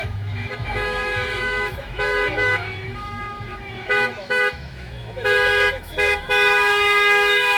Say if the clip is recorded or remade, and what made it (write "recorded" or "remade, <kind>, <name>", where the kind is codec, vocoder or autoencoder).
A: remade, autoencoder, DAC-VAE